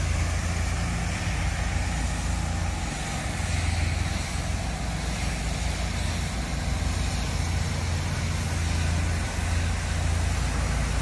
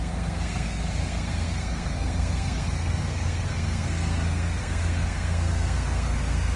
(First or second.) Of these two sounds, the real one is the first